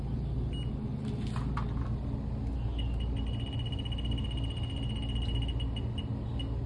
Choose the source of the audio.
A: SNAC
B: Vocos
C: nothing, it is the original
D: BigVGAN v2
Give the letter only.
C